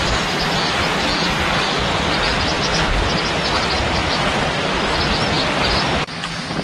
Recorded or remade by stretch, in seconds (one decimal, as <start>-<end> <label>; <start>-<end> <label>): 0.0-6.6 recorded